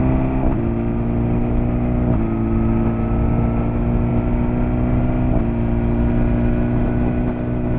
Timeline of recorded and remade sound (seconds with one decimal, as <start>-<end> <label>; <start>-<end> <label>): 0.0-7.8 recorded